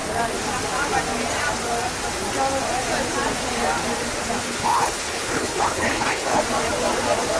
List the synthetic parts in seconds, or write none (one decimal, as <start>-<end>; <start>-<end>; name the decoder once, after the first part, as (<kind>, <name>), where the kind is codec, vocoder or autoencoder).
4.4-6.4 (codec, HILCodec)

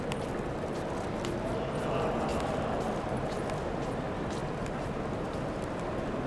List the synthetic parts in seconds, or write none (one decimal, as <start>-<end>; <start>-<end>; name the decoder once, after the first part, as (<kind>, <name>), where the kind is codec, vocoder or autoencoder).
none

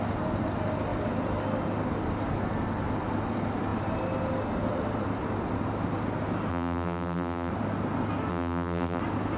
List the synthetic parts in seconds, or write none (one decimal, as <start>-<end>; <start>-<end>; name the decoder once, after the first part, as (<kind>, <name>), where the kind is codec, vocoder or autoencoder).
6.5-7.5 (vocoder, BigVGAN v2); 8.3-9.0

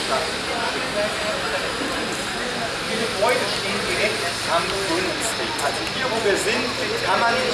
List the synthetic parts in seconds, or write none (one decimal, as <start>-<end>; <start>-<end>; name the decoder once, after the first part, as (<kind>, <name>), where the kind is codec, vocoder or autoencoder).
none

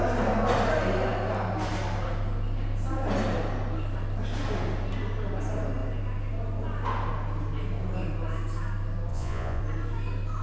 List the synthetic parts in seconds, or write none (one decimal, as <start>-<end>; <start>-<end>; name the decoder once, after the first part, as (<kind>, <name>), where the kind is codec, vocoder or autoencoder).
9.1-9.6 (vocoder, Vocos)

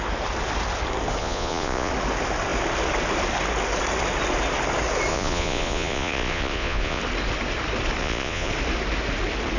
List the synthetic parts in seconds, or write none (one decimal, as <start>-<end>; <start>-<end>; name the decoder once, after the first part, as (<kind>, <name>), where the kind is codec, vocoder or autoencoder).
1.2-1.9 (vocoder, Vocos); 5.1-7.0; 8.0-8.5

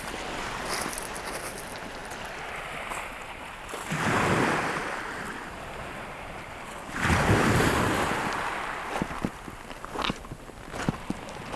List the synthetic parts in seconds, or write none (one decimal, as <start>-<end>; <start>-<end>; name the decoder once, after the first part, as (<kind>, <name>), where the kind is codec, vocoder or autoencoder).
none

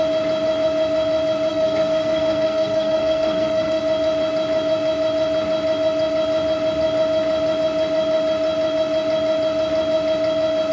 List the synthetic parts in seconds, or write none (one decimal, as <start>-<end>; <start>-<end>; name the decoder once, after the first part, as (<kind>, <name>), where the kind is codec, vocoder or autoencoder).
1.5-3.8 (codec, SNAC)